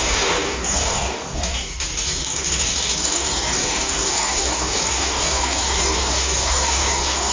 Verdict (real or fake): fake